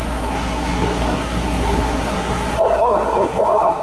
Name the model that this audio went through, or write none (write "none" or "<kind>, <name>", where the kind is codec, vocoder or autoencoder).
codec, SNAC